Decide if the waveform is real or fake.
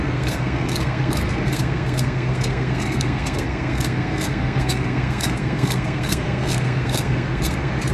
fake